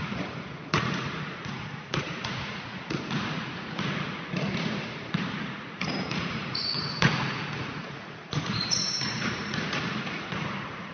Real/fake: fake